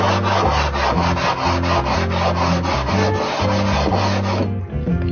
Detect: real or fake real